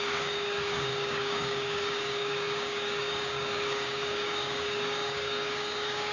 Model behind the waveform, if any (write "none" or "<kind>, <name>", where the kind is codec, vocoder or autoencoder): codec, DAC